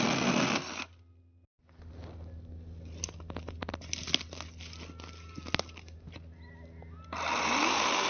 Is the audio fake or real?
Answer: real